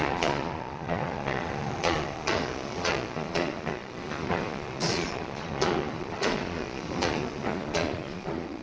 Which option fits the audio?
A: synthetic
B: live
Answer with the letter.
A